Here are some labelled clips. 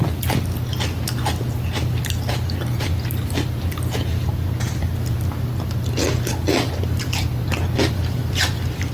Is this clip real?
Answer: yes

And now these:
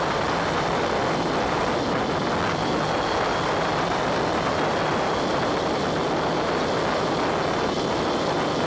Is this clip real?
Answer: yes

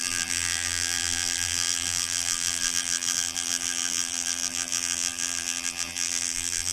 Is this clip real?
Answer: no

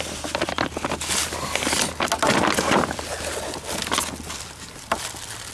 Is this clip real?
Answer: yes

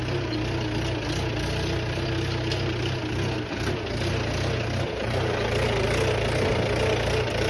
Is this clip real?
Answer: yes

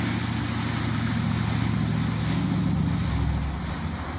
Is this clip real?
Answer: yes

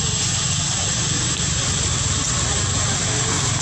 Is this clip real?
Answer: yes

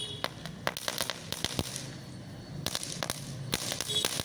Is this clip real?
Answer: yes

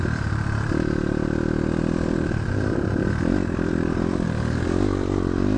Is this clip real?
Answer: no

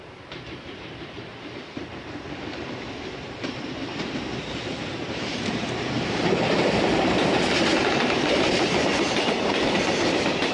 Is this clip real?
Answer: no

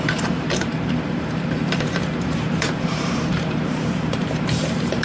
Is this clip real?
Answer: no